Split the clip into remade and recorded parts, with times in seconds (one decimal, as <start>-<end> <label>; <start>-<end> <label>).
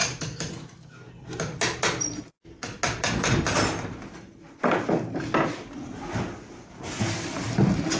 0.0-8.0 recorded